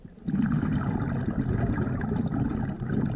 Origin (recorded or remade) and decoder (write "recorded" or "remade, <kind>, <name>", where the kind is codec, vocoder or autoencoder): recorded